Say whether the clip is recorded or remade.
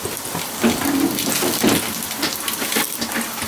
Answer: recorded